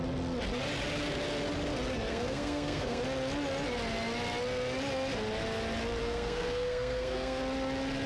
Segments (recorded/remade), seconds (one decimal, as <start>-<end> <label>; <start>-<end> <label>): 0.0-2.1 recorded; 2.1-3.0 remade; 3.0-6.0 recorded; 6.0-7.4 remade; 7.4-8.1 recorded